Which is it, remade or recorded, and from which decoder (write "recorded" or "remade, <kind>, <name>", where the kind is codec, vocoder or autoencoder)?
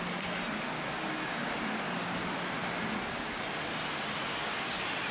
recorded